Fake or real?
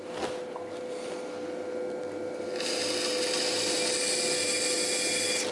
real